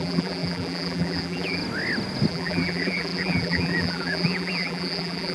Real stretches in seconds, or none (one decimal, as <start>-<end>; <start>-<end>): 1.6-2.3